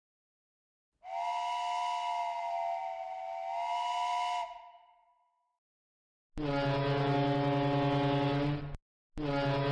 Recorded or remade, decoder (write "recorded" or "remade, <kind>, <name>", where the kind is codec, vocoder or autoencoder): recorded